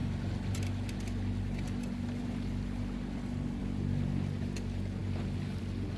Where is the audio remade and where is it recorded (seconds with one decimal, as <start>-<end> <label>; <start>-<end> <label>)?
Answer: 0.0-6.0 recorded